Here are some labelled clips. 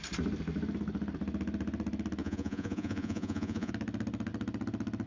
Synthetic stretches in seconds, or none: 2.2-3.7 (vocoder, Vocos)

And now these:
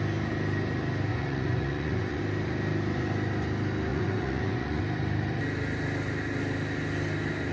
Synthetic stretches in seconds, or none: 1.1-2.2 (vocoder, Vocos); 3.9-4.8

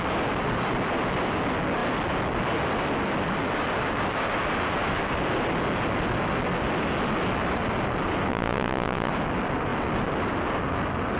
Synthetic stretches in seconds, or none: 8.3-9.1 (vocoder, Vocos)